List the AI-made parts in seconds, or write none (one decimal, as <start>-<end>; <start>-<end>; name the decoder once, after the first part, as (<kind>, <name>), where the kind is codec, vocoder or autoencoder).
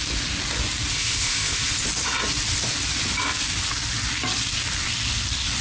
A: 0.9-1.7 (codec, ZipCodec)